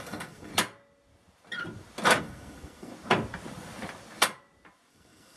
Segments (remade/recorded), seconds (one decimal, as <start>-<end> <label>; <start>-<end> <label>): 0.0-0.5 remade; 0.5-2.2 recorded; 2.2-2.9 remade; 2.9-4.9 recorded; 4.9-5.4 remade